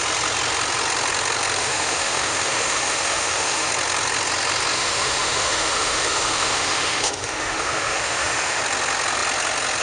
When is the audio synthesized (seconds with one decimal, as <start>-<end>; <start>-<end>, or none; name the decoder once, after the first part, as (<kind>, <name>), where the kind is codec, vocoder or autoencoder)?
1.6-3.7 (autoencoder, DAC-VAE); 4.7-8.6